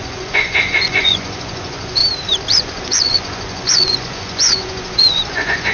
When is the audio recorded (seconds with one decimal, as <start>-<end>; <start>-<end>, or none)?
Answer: 2.0-2.6